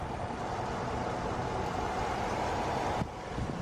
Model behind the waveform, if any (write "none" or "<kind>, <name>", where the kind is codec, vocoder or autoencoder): none